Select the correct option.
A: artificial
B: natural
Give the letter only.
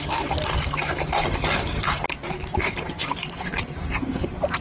A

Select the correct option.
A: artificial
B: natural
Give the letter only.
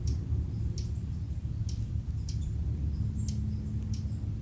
B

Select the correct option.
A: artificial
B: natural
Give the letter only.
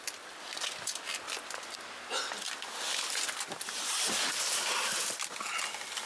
B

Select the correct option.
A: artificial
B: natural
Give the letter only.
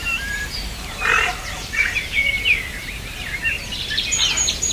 A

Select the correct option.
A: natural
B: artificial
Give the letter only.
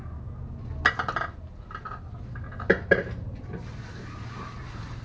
A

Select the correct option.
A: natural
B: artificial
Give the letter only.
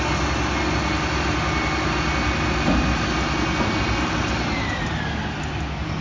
A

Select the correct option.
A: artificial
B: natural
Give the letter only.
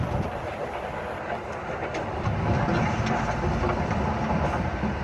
B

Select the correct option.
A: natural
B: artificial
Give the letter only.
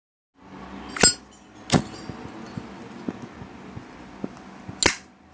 A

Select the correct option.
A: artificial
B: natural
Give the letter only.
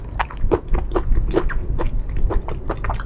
A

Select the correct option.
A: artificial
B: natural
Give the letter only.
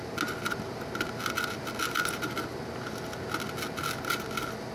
B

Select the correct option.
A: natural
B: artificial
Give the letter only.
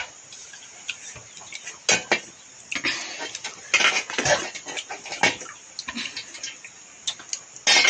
A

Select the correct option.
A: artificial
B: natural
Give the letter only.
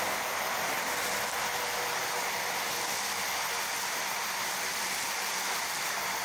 B